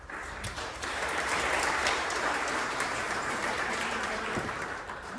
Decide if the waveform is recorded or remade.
remade